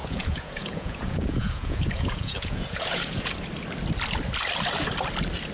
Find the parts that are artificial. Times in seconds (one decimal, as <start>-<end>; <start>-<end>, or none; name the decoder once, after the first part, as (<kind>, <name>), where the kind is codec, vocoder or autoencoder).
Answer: 0.0-3.3 (vocoder, Vocos)